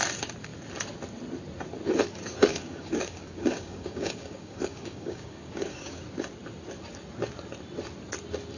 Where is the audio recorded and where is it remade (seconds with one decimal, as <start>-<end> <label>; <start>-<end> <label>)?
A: 0.0-2.5 recorded; 2.5-6.0 remade; 6.0-8.6 recorded